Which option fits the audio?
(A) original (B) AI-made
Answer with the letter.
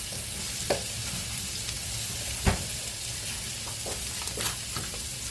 B